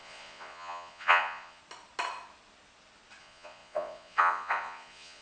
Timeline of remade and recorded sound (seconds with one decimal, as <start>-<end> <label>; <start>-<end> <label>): 0.0-1.6 remade; 1.6-3.2 recorded; 3.2-5.2 remade